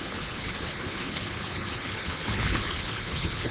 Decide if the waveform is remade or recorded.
remade